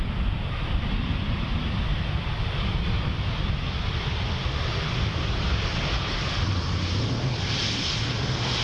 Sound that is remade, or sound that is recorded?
recorded